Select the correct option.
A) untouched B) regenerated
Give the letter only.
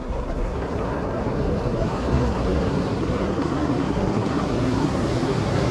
B